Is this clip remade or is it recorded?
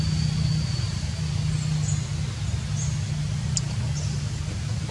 recorded